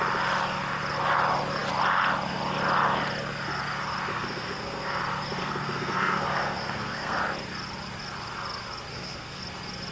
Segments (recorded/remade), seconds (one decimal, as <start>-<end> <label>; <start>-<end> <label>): 0.0-4.1 recorded; 4.1-5.0 remade; 5.0-5.4 recorded; 5.4-7.2 remade; 7.2-8.9 recorded; 8.9-9.4 remade; 9.4-9.9 recorded